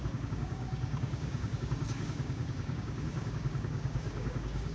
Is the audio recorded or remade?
remade